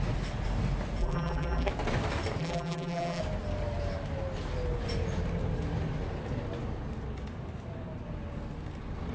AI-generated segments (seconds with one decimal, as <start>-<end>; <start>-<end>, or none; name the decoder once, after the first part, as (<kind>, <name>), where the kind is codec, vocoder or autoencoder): 1.0-1.7 (vocoder, BigVGAN v2); 2.4-3.2